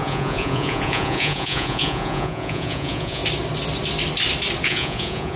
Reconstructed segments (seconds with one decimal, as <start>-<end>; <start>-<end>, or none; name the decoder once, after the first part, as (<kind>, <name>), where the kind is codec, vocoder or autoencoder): 0.0-3.2 (vocoder, Vocos); 4.6-5.4